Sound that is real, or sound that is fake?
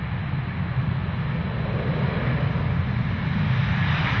real